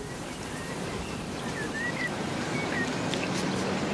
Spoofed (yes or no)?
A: no